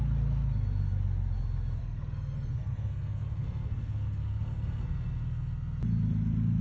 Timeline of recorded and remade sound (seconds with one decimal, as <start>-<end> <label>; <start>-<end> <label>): 0.0-1.8 recorded; 1.8-5.8 remade; 5.8-6.6 recorded